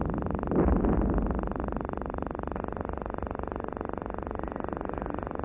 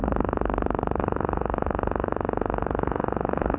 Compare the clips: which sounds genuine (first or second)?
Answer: first